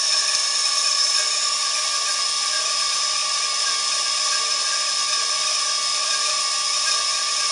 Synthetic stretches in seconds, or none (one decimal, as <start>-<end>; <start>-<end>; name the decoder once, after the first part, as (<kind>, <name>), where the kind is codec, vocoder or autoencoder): none